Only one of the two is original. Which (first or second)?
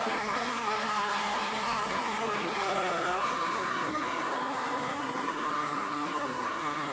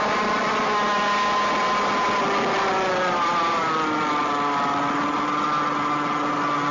second